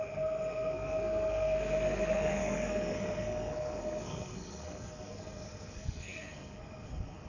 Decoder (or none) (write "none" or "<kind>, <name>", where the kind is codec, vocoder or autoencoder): codec, SNAC